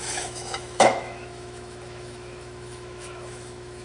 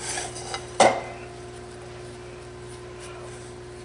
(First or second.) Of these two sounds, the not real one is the first